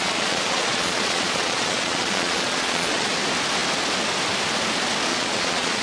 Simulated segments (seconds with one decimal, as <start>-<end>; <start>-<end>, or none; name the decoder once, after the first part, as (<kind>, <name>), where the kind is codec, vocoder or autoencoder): 0.0-3.1 (vocoder, Vocos); 5.1-5.8